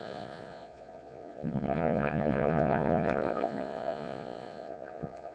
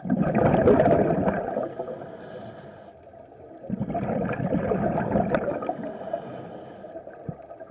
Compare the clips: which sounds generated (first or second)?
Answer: first